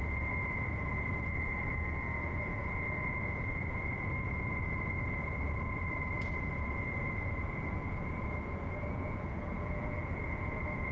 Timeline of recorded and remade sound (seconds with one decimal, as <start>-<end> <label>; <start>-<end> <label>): 0.0-10.9 remade